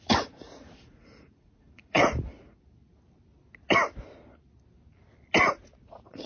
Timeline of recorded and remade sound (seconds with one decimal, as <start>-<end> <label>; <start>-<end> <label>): 0.0-2.0 remade; 2.0-5.8 recorded; 5.8-6.3 remade